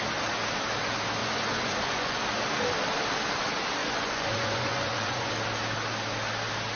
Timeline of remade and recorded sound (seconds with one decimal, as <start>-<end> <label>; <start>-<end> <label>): 0.0-1.2 recorded; 1.2-2.2 remade; 2.2-3.8 recorded; 3.8-5.3 remade; 5.3-6.8 recorded